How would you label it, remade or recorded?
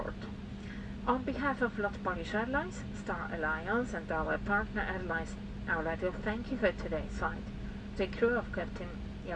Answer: recorded